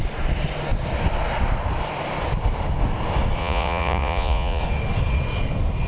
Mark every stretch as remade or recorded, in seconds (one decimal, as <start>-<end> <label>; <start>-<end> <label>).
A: 0.0-3.4 recorded; 3.4-4.6 remade; 4.6-5.9 recorded